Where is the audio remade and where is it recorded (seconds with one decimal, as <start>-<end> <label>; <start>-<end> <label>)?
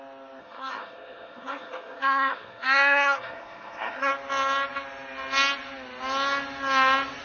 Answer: 0.0-0.4 recorded; 0.4-4.1 remade; 4.1-7.2 recorded